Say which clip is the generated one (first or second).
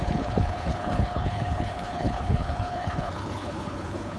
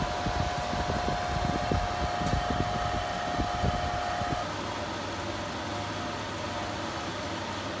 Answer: first